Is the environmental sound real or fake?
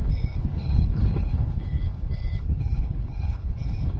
fake